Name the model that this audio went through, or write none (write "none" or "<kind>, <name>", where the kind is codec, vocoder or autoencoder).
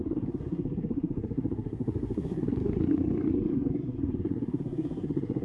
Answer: codec, SNAC